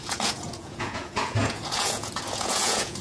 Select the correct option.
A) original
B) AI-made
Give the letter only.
B